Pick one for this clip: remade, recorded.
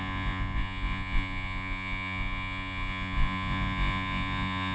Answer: remade